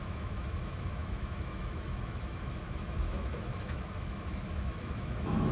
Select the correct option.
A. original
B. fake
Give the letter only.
B